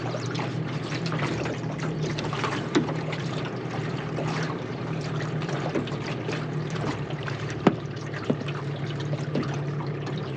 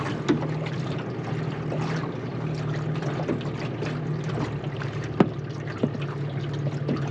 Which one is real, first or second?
second